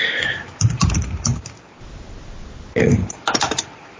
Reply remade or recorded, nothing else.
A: remade